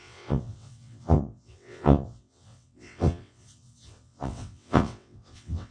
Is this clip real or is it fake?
fake